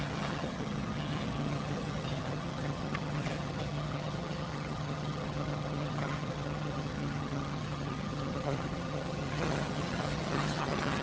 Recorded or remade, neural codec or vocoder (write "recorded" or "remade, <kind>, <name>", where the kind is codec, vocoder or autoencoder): remade, vocoder, HiFi-GAN